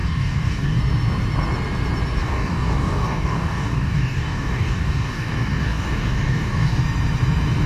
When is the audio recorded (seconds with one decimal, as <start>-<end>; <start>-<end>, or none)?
0.8-2.2; 6.8-7.7